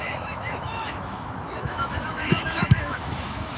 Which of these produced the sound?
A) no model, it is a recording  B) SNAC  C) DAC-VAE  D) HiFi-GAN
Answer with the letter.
C